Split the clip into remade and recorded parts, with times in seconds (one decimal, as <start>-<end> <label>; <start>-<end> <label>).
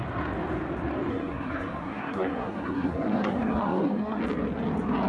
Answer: 0.0-1.1 recorded; 1.1-4.2 remade; 4.2-5.1 recorded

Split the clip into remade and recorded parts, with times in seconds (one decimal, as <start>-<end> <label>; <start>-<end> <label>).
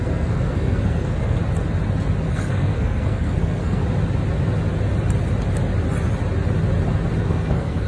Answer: 0.0-1.4 remade; 1.4-2.3 recorded; 2.3-3.8 remade; 3.8-7.2 recorded; 7.2-7.9 remade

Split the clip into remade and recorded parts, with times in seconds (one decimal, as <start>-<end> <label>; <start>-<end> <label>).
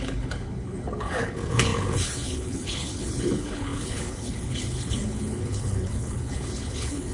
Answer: 0.0-7.1 remade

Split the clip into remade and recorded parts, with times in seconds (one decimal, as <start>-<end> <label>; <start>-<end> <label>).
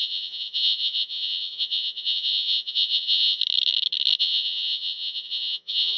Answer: 0.0-3.4 remade; 3.4-4.2 recorded; 4.2-6.0 remade